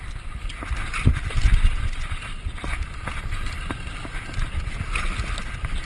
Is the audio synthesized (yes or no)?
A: no